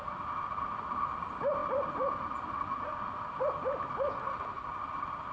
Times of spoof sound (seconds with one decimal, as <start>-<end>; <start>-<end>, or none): none